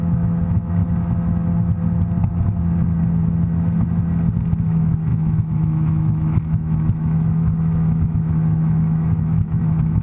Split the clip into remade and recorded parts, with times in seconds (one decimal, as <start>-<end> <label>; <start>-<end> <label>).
0.0-0.8 remade; 0.8-4.6 recorded; 4.6-10.0 remade